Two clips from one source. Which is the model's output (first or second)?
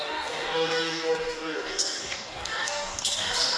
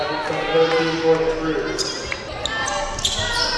first